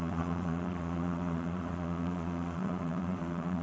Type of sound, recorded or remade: remade